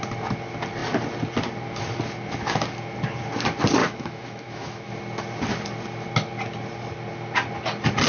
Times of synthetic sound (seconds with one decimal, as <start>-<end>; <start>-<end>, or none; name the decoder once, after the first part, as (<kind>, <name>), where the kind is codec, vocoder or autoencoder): 3.8-4.9 (autoencoder, DAC-VAE)